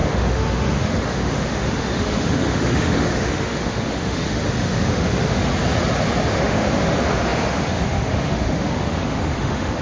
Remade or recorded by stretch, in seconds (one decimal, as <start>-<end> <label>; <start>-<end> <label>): 0.0-5.5 remade; 5.5-6.3 recorded; 6.3-9.8 remade